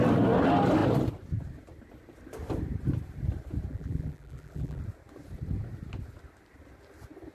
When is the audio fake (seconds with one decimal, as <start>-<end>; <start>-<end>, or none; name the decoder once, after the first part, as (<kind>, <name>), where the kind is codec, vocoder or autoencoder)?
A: 3.7-4.8 (vocoder, BigVGAN v2)